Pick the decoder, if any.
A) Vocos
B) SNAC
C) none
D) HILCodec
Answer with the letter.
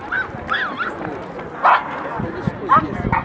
C